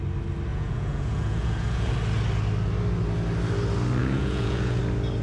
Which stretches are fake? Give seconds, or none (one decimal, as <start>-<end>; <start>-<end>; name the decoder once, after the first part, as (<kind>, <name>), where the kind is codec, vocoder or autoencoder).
0.5-1.9 (vocoder, Vocos); 4.0-4.8